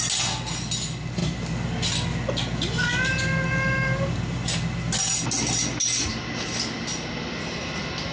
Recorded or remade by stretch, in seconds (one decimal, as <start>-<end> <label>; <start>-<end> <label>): 0.0-8.1 recorded